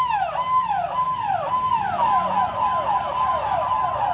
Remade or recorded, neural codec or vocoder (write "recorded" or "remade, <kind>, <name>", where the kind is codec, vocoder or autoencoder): recorded